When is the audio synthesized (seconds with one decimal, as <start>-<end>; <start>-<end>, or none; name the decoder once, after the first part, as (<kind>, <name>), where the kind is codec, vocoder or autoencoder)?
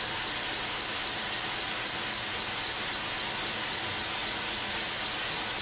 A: 4.2-4.9 (vocoder, Vocos)